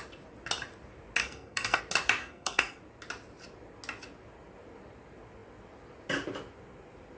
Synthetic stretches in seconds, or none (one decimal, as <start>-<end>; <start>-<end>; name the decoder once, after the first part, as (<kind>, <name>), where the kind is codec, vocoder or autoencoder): 1.2-1.8 (codec, SNAC); 2.2-2.8